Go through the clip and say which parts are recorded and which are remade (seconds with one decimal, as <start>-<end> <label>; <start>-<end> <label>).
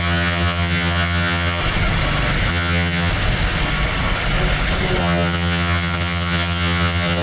0.0-1.6 remade; 1.6-2.5 recorded; 2.5-3.1 remade; 3.1-5.0 recorded; 5.0-7.2 remade